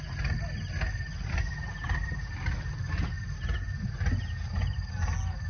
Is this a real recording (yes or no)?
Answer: yes